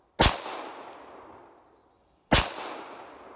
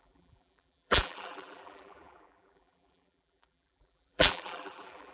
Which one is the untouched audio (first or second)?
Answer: first